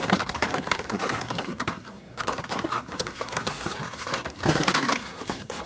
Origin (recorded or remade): remade